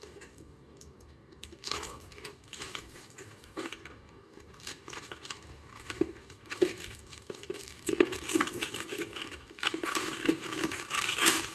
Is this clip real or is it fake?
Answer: fake